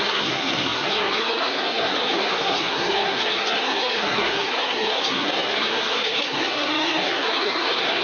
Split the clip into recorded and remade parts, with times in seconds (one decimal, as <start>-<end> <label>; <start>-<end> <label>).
0.0-8.0 remade